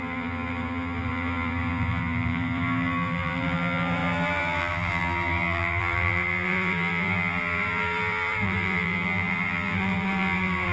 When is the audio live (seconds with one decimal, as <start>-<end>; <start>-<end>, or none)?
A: none